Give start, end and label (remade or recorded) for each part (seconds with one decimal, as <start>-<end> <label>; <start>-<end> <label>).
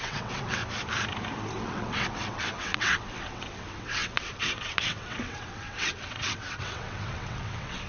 0.0-0.6 remade; 0.6-1.6 recorded; 1.6-7.9 remade